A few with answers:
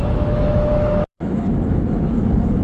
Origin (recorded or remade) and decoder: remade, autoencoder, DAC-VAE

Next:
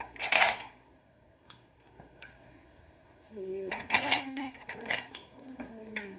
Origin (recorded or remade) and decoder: remade, codec, SNAC